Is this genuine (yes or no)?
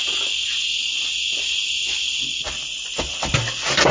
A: yes